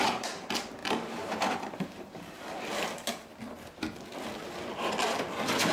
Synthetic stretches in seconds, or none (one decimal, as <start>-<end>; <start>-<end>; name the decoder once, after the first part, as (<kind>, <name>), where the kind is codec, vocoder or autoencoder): 0.0-0.8 (vocoder, BigVGAN v2); 1.4-3.3